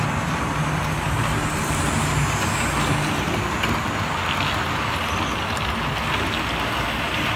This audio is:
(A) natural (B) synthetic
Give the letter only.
A